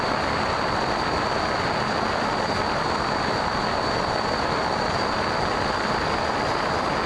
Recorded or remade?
recorded